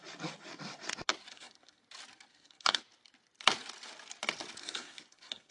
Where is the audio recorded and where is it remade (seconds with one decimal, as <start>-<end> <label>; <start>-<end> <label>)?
0.0-1.3 recorded; 1.3-1.8 remade; 1.8-2.3 recorded; 2.3-2.8 remade; 2.8-4.6 recorded; 4.6-5.5 remade

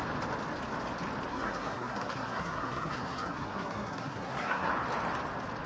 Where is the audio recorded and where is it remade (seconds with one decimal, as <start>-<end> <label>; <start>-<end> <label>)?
0.0-1.3 recorded; 1.3-4.7 remade; 4.7-5.7 recorded

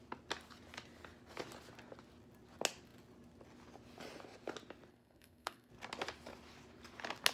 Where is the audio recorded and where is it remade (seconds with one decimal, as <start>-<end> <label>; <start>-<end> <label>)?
0.0-4.9 recorded; 4.9-5.7 remade; 5.7-7.3 recorded

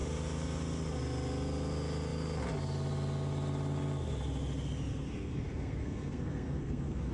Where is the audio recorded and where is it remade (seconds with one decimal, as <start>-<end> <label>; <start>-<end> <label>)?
0.0-4.9 recorded; 4.9-7.1 remade

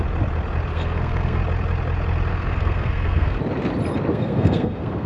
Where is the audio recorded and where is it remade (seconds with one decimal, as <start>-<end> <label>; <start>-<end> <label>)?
0.0-0.7 recorded; 0.7-1.4 remade; 1.4-2.3 recorded; 2.3-3.4 remade; 3.4-4.1 recorded; 4.1-5.1 remade

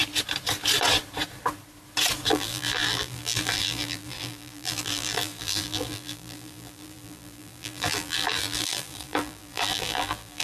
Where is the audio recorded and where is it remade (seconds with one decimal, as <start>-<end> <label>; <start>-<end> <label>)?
0.0-2.3 recorded; 2.3-10.4 remade

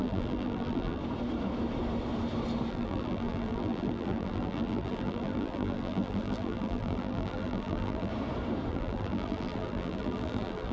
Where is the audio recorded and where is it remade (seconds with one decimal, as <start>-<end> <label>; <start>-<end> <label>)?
0.0-1.0 remade; 1.0-2.7 recorded; 2.7-8.1 remade; 8.1-8.7 recorded; 8.7-10.7 remade

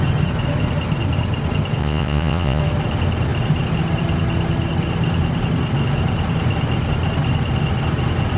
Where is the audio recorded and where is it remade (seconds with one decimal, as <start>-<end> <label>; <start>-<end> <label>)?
0.0-1.8 recorded; 1.8-2.6 remade; 2.6-8.4 recorded